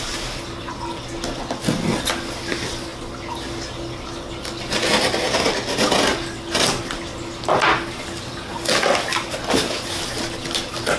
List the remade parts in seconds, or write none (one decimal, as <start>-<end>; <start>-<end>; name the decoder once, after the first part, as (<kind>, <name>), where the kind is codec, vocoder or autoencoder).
none